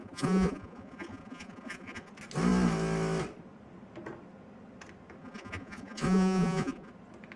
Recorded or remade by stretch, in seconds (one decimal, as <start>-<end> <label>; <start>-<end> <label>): 0.0-2.1 remade; 2.1-5.2 recorded; 5.2-6.9 remade; 6.9-7.4 recorded